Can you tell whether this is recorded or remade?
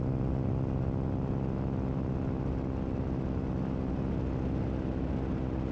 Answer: recorded